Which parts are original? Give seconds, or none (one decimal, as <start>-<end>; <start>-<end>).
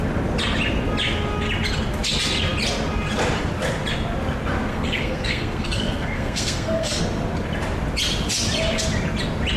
0.0-4.7; 7.0-9.6